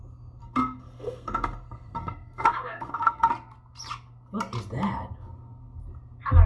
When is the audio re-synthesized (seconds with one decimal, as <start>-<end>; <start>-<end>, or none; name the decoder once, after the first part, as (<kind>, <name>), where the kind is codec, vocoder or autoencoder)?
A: 0.4-3.3 (codec, SNAC)